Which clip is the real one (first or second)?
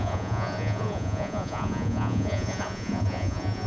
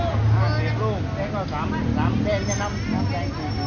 second